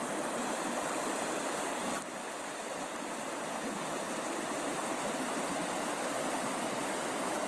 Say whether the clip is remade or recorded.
recorded